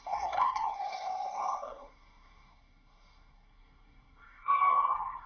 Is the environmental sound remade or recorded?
remade